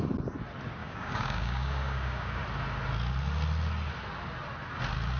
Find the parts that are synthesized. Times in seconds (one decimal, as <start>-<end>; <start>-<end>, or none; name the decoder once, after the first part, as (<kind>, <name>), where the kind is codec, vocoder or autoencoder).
0.8-2.4 (codec, DAC)